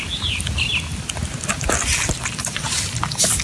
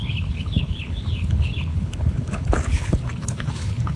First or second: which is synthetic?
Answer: second